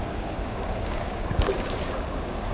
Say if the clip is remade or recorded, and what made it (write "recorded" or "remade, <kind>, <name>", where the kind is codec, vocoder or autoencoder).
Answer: remade, codec, DAC